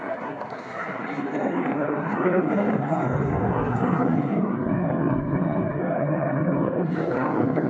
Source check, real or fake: fake